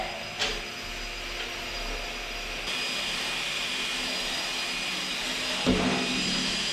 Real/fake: real